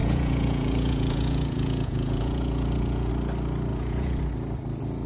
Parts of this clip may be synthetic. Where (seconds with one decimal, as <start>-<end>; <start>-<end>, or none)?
0.0-3.1; 3.7-4.2